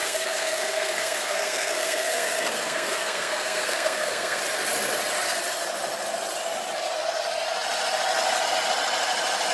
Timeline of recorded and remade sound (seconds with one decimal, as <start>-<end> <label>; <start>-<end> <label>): 0.0-4.4 remade; 4.4-9.5 recorded